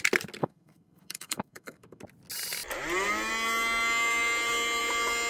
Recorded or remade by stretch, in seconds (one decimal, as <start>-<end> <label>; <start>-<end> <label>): 0.0-0.4 recorded; 0.4-2.0 remade; 2.0-5.3 recorded